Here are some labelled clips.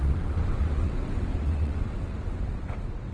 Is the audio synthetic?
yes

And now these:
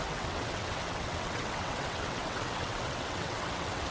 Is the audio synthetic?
yes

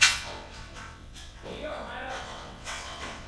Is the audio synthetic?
yes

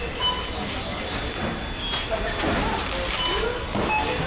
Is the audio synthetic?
no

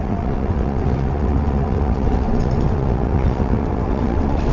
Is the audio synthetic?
yes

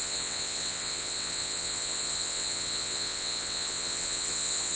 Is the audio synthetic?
yes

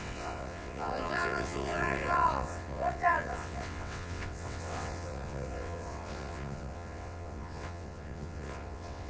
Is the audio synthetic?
yes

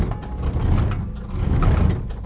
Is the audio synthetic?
no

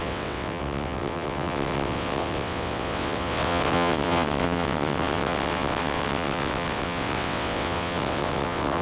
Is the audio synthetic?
yes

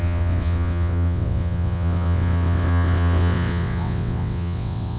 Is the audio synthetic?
yes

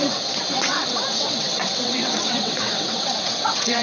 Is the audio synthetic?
yes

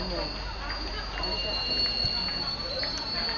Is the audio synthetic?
no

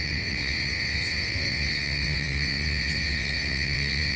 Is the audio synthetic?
yes